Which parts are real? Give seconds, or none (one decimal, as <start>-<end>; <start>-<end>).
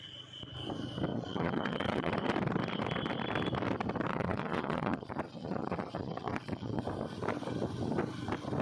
0.0-1.1; 2.1-4.1; 6.8-8.6